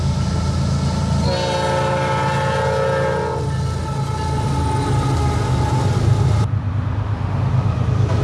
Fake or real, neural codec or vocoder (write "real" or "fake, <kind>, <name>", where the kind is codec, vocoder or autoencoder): real